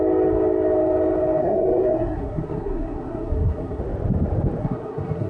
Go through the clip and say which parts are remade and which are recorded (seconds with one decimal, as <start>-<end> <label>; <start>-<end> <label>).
0.0-1.4 recorded; 1.4-3.8 remade; 3.8-4.6 recorded; 4.6-5.3 remade